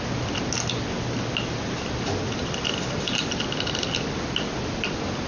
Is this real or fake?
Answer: real